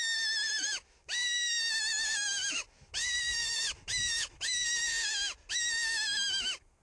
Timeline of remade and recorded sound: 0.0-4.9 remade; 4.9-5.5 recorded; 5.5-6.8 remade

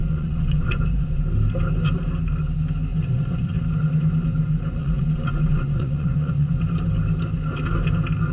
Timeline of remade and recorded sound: 0.0-1.2 remade; 1.2-2.9 recorded; 2.9-3.6 remade; 3.6-4.8 recorded; 4.8-6.6 remade; 6.6-8.3 recorded

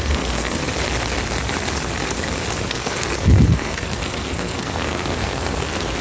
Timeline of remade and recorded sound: 0.0-0.6 remade; 0.6-2.7 recorded; 2.7-6.0 remade